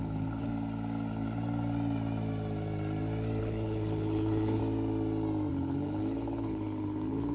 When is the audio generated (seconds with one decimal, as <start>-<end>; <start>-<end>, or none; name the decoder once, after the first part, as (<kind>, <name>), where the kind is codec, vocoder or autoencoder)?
0.0-0.5 (codec, HILCodec); 3.4-4.6; 5.5-7.3